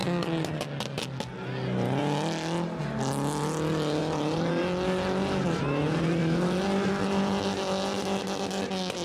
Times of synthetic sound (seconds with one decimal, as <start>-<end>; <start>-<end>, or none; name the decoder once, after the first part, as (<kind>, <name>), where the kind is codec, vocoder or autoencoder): 4.0-4.5 (vocoder, BigVGAN v2)